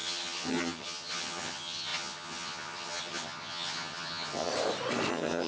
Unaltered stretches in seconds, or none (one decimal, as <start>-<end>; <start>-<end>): 4.5-5.1